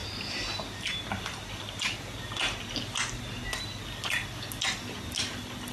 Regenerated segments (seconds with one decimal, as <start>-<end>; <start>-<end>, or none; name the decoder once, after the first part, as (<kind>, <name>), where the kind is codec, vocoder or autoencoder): none